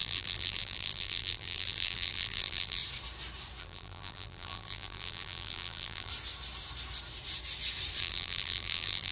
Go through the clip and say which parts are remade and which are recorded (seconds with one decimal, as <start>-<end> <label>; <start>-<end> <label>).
0.0-2.8 remade; 2.8-3.6 recorded; 3.6-6.1 remade; 6.1-8.0 recorded; 8.0-9.1 remade